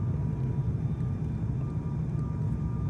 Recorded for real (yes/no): yes